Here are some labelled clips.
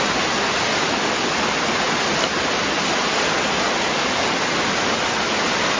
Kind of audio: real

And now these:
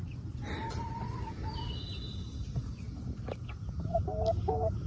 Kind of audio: real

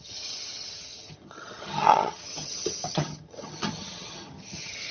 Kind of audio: fake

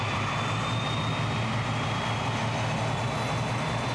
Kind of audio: real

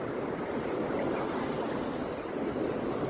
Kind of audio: real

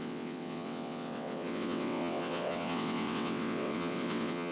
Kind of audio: fake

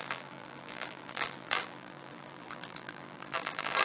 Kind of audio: fake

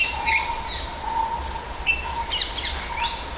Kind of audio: real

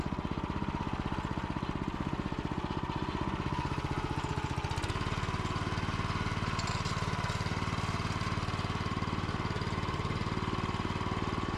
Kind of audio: real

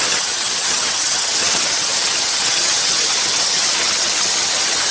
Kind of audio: fake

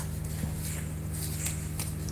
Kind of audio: real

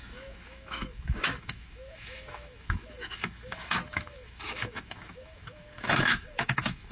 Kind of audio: fake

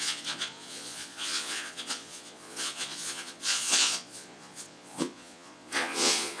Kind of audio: fake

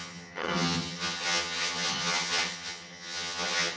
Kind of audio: fake